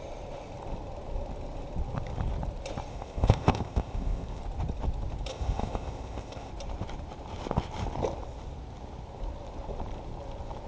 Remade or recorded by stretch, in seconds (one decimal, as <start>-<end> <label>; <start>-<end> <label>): 0.0-2.9 recorded; 2.9-4.4 remade; 4.4-5.3 recorded; 5.3-6.5 remade; 6.5-10.7 recorded